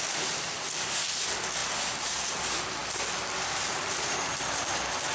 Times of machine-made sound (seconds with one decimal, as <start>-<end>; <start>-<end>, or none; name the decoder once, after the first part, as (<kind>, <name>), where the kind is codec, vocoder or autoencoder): none

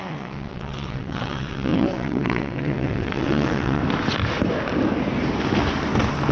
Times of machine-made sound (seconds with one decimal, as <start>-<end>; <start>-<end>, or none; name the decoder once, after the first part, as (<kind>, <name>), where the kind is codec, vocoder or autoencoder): 0.0-3.8 (vocoder, WaveNeXt)